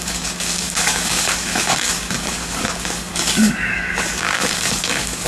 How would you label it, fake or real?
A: fake